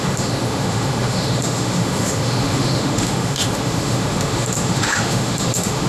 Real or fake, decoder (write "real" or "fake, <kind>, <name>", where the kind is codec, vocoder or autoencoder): fake, autoencoder, DAC-VAE